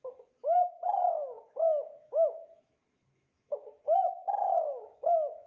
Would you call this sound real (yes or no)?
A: no